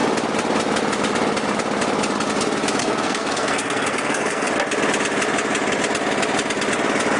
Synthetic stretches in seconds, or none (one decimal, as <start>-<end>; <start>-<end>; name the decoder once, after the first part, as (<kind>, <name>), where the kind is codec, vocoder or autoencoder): 2.8-4.5 (codec, SNAC)